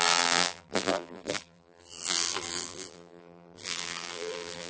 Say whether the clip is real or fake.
fake